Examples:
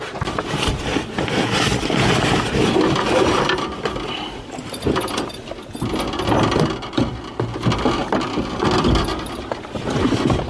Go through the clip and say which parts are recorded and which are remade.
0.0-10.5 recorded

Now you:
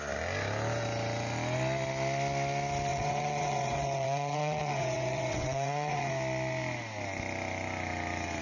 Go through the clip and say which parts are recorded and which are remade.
0.0-2.9 recorded; 2.9-6.1 remade; 6.1-8.4 recorded

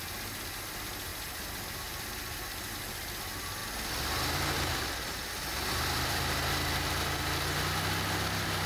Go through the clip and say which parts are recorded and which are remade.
0.0-1.1 recorded; 1.1-2.7 remade; 2.7-3.6 recorded; 3.6-6.9 remade; 6.9-8.7 recorded

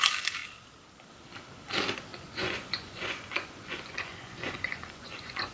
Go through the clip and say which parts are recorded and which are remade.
0.0-2.1 recorded; 2.1-5.5 remade

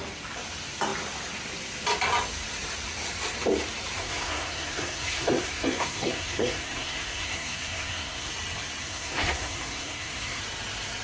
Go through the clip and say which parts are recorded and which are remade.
0.0-4.0 recorded; 4.0-8.3 remade; 8.3-8.8 recorded; 8.8-10.4 remade; 10.4-11.0 recorded

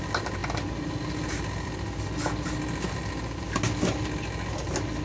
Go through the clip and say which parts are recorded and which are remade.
0.0-5.0 recorded